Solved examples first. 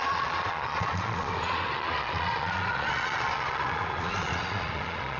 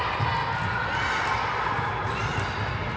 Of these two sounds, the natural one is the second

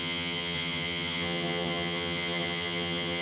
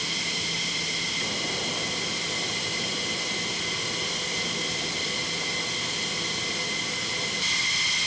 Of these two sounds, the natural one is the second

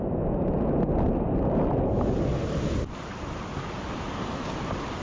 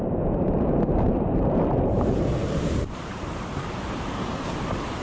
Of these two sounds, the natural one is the first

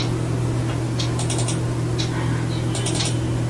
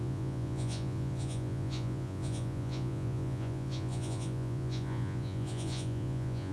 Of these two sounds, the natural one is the first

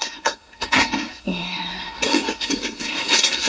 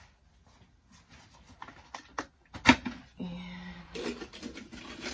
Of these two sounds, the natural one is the second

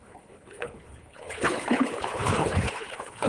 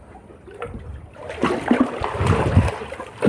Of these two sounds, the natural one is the second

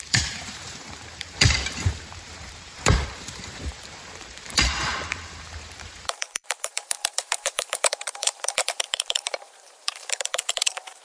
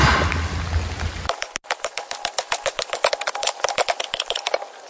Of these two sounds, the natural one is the second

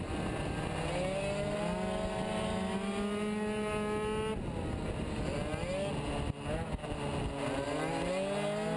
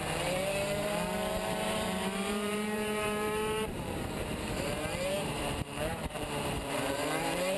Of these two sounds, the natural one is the first